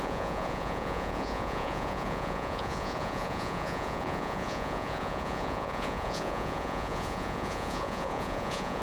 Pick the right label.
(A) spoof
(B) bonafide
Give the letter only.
A